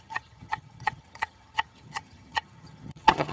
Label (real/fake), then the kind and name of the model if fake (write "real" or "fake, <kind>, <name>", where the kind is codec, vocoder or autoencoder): fake, vocoder, HiFi-GAN